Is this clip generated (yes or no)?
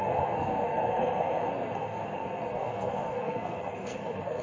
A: yes